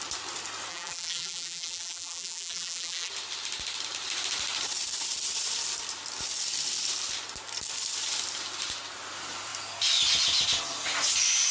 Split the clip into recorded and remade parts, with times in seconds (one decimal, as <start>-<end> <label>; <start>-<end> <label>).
0.0-0.7 recorded; 0.7-3.1 remade; 3.1-11.5 recorded